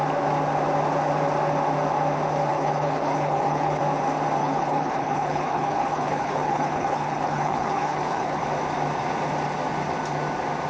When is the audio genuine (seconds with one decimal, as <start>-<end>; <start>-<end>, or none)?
0.0-2.5; 3.8-4.4; 8.4-10.7